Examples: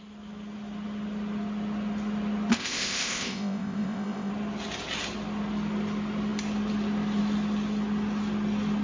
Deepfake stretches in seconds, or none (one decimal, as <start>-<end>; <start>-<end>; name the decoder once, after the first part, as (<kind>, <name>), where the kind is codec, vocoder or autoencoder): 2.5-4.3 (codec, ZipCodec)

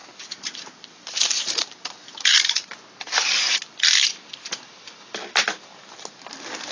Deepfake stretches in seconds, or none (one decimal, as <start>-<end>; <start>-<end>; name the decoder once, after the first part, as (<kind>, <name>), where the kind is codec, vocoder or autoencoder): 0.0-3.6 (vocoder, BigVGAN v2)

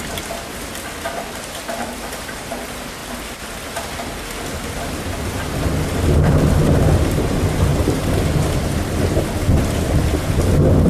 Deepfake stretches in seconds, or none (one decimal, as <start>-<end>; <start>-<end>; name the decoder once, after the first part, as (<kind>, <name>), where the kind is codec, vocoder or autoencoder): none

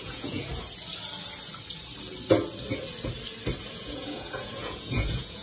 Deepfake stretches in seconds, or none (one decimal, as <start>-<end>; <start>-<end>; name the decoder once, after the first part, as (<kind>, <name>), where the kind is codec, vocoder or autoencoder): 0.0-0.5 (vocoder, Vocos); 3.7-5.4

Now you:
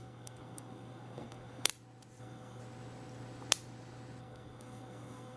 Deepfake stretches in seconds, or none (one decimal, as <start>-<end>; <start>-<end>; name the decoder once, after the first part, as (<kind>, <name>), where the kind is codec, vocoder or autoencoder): 0.0-1.7 (codec, SNAC); 2.2-2.6; 4.2-5.4

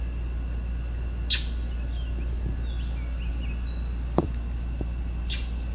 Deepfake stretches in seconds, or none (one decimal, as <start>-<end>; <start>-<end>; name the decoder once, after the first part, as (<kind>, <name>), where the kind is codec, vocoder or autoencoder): 3.3-5.0 (vocoder, BigVGAN v2)

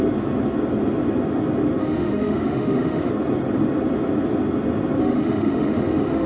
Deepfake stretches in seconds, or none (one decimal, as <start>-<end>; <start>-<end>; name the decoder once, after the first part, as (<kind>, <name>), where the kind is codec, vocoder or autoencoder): 1.8-3.1 (autoencoder, DAC-VAE); 5.0-6.3

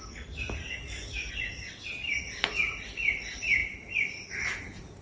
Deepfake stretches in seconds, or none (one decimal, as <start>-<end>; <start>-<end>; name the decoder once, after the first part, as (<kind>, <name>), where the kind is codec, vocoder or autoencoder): 0.6-1.3 (codec, DAC)